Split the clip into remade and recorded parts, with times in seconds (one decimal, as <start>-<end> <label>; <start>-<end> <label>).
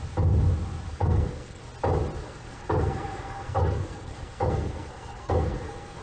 0.0-0.9 recorded; 0.9-1.6 remade; 1.6-2.2 recorded; 2.2-6.0 remade